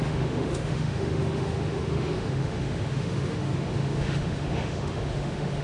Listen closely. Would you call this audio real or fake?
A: fake